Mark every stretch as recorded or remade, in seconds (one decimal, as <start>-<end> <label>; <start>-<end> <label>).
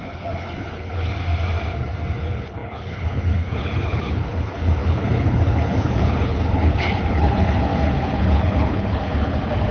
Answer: 0.0-1.1 remade; 1.1-2.2 recorded; 2.2-9.7 remade